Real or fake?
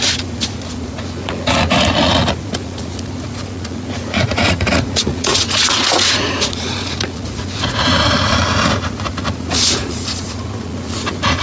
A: fake